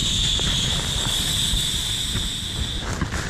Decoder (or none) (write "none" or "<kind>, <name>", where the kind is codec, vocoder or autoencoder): vocoder, BigVGAN v2